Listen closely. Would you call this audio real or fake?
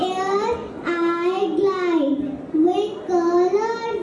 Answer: real